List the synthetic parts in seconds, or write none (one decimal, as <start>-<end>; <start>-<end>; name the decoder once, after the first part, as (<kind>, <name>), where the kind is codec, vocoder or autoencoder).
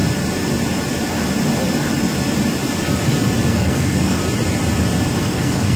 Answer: 3.5-4.2 (codec, SNAC); 5.2-5.8